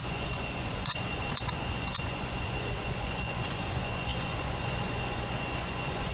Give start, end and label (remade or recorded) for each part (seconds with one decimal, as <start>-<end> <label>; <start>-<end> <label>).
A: 0.0-6.1 remade